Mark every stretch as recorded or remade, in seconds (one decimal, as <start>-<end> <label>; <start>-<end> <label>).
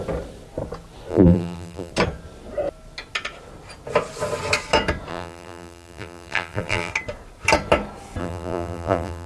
0.0-1.1 recorded; 1.1-1.9 remade; 1.9-5.1 recorded; 5.1-6.9 remade; 6.9-8.2 recorded; 8.2-9.3 remade